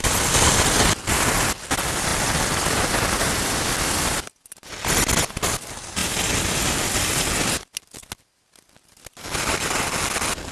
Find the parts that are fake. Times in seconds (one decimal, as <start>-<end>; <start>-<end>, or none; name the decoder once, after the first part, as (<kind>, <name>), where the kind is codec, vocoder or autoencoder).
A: none